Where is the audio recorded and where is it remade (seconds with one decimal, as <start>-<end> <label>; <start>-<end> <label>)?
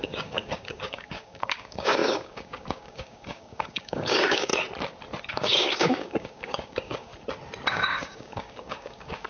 0.0-4.5 remade; 4.5-5.3 recorded; 5.3-7.1 remade; 7.1-7.7 recorded; 7.7-9.3 remade